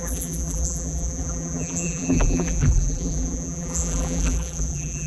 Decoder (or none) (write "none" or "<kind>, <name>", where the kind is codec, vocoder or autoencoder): vocoder, BigVGAN v2